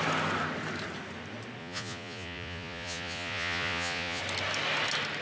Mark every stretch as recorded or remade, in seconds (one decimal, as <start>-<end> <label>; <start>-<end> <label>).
0.0-1.6 recorded; 1.6-4.2 remade; 4.2-5.2 recorded

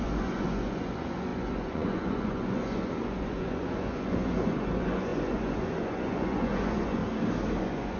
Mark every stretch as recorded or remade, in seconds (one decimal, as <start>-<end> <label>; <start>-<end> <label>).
0.0-7.0 remade; 7.0-7.6 recorded; 7.6-8.0 remade

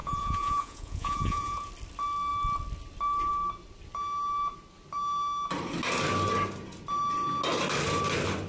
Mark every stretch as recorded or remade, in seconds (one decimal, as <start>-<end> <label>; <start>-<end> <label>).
0.0-1.7 remade; 1.7-8.5 recorded